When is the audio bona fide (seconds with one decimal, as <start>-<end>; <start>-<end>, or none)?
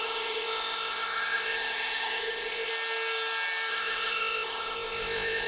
2.7-3.7